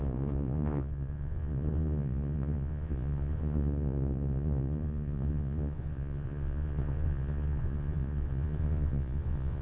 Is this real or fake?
fake